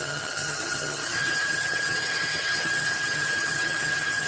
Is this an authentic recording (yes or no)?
no